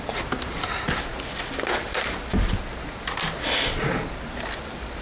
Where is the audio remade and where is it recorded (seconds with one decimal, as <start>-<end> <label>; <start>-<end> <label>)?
0.0-5.0 recorded